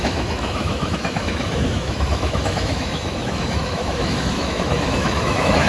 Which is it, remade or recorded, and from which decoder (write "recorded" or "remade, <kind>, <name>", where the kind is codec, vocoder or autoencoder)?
remade, autoencoder, DAC-VAE